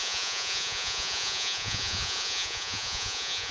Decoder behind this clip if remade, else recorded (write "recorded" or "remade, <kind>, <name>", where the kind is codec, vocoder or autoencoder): remade, vocoder, Vocos